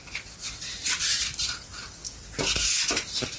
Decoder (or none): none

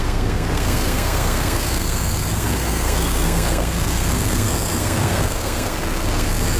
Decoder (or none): codec, SNAC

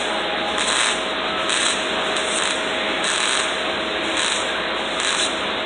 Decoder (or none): none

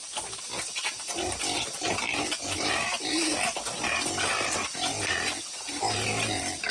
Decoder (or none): none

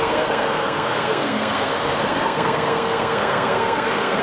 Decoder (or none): codec, SNAC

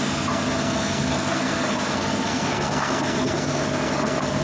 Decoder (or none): codec, SNAC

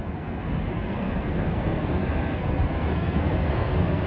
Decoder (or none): codec, SNAC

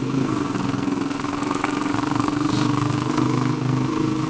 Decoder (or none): codec, SNAC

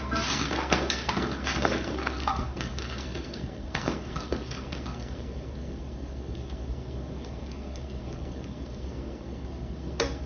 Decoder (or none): codec, SNAC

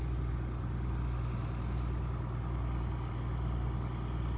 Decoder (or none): none